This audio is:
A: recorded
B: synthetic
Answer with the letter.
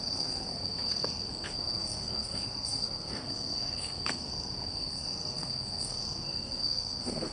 B